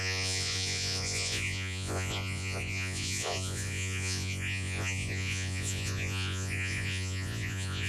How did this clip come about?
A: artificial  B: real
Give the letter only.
A